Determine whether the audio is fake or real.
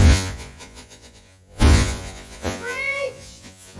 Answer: fake